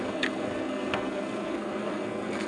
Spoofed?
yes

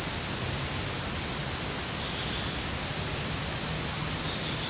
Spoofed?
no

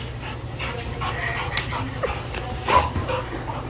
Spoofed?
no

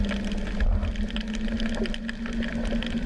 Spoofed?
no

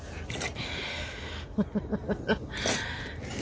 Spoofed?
no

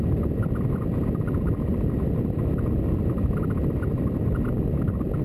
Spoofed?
no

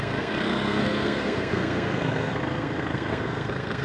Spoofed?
yes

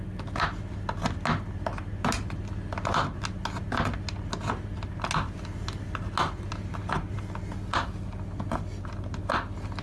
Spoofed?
no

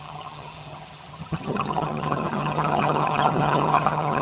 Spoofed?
yes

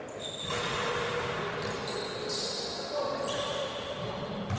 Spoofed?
no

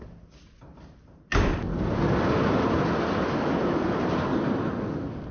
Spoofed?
no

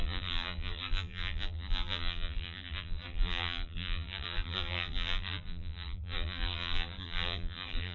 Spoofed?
yes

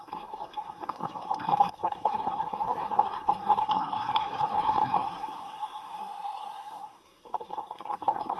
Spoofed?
yes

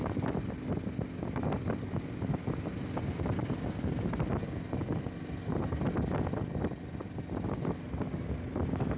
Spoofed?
no